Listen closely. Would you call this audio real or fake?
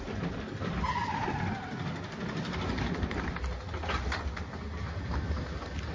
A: real